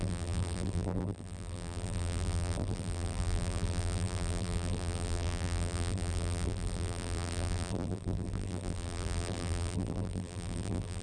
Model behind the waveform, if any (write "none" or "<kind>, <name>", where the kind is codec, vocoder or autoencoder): vocoder, BigVGAN v2